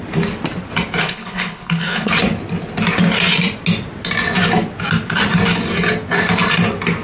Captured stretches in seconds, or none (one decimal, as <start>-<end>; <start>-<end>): 0.0-1.0; 2.1-7.0